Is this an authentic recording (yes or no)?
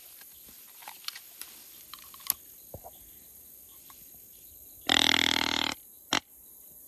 yes